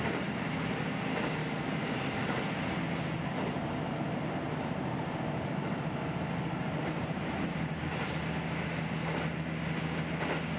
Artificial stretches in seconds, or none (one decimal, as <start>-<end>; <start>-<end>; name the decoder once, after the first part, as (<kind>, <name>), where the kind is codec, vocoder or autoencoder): 1.4-2.4 (codec, DAC)